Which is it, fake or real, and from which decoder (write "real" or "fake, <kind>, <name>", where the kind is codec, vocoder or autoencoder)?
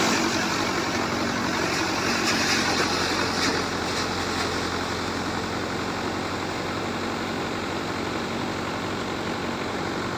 real